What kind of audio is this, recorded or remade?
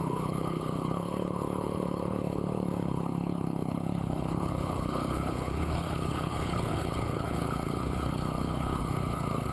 remade